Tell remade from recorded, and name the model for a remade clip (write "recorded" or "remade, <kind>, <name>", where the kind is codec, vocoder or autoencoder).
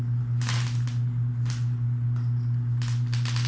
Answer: recorded